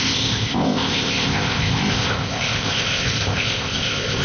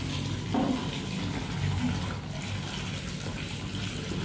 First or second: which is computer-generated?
first